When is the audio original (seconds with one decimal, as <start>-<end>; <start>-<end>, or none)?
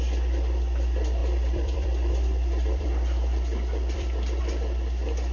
0.0-1.2; 4.4-5.3